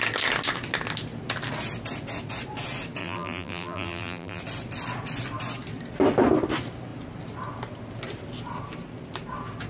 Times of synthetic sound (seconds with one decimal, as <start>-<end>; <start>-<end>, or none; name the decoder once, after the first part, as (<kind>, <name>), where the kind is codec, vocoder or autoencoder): 3.0-4.4 (vocoder, BigVGAN v2)